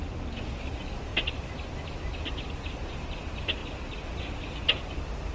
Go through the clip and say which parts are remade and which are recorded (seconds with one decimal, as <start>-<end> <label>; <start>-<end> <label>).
0.0-5.3 recorded